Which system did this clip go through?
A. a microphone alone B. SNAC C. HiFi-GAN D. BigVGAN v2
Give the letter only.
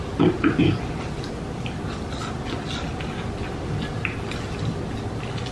A